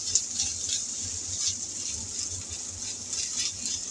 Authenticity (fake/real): real